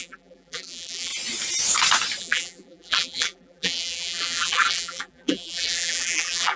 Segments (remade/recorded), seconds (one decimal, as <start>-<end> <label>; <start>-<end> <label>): 0.0-1.1 remade; 1.1-2.2 recorded; 2.2-6.6 remade